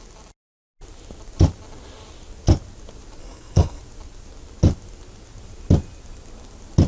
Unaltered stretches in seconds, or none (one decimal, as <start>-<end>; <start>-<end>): 0.0-3.2; 3.8-6.9